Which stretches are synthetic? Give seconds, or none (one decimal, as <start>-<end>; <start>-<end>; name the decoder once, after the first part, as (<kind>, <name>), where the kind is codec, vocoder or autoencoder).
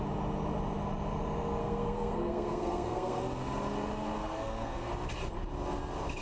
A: 1.6-3.2 (codec, SNAC); 4.2-4.9